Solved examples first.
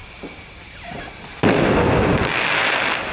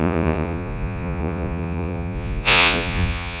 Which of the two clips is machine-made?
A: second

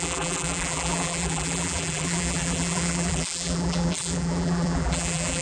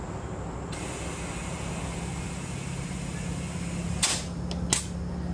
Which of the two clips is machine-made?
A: first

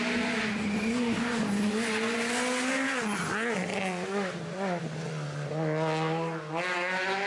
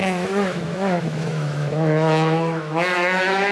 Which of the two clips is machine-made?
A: second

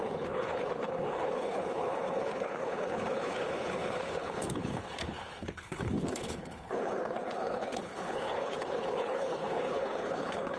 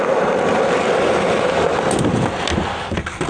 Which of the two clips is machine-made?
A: first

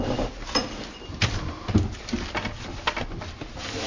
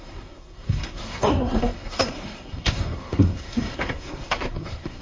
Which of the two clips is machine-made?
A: second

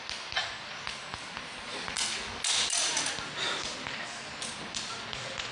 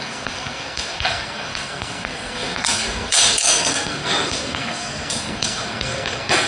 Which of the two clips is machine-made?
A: second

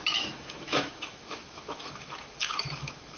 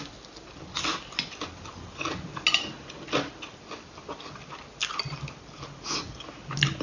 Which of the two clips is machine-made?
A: first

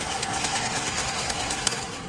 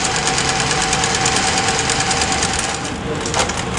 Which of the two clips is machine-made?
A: first